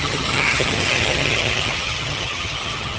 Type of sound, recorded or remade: remade